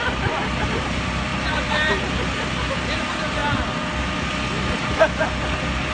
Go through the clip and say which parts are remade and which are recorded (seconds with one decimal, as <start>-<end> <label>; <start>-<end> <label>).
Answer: 0.0-1.3 recorded; 1.3-2.1 remade; 2.1-5.9 recorded